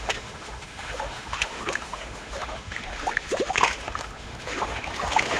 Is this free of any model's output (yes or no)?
no